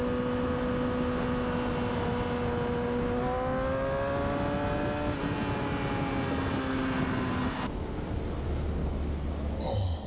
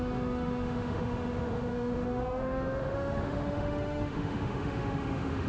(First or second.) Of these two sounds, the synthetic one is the second